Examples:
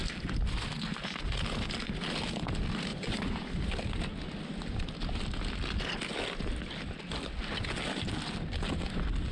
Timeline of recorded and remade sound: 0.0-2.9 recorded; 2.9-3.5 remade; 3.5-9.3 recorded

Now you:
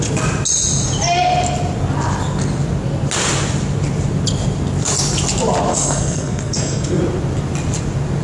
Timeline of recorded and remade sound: 0.0-5.7 recorded; 5.7-7.0 remade; 7.0-8.2 recorded